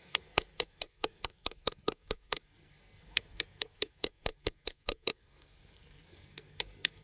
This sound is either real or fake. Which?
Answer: fake